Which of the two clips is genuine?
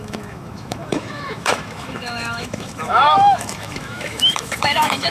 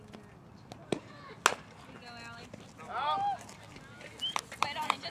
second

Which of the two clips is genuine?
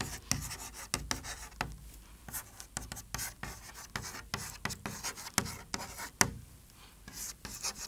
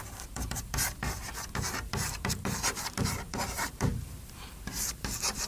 first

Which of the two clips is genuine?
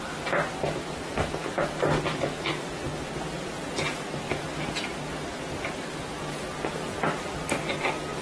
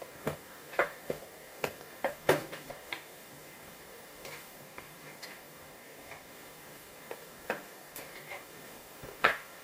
first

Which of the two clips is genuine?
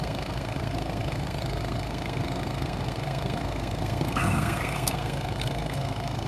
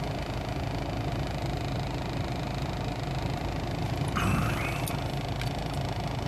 second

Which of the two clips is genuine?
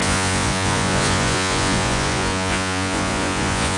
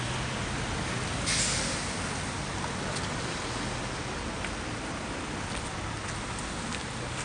second